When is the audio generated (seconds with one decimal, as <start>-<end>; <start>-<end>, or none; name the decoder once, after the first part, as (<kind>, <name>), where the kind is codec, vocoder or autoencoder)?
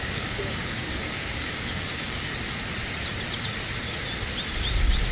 0.0-2.3 (codec, DAC)